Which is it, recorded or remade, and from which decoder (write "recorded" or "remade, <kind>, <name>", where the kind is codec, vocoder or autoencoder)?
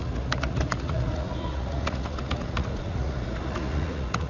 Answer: remade, vocoder, Vocos